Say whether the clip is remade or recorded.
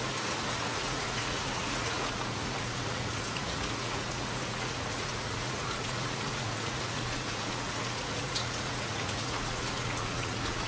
remade